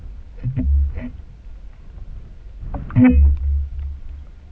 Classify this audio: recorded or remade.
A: recorded